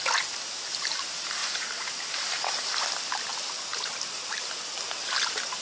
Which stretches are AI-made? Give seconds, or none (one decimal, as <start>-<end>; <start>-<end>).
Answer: 1.4-2.9